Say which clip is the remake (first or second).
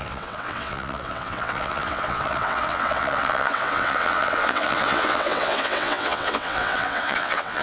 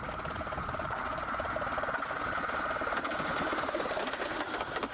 first